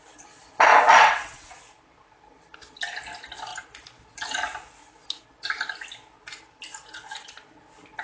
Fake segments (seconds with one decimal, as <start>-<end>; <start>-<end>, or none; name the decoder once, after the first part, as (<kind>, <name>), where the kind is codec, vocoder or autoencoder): 0.7-1.5 (vocoder, WaveNeXt)